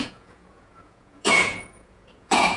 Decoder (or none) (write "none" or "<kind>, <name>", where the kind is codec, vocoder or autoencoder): vocoder, Vocos